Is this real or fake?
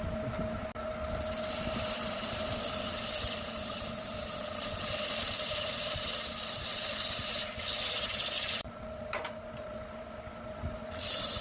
real